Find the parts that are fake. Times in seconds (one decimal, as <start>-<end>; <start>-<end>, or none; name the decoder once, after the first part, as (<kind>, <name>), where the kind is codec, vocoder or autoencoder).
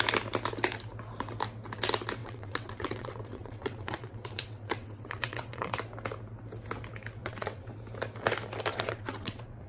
2.2-5.7 (vocoder, WaveNeXt); 7.2-7.7; 8.7-9.7